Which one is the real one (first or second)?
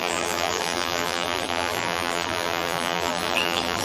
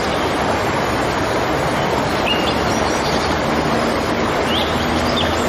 second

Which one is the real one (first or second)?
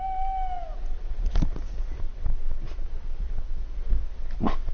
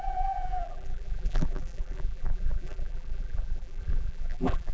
first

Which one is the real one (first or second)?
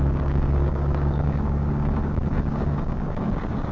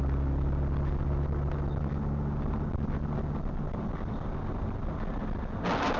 second